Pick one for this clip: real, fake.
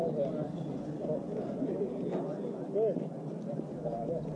real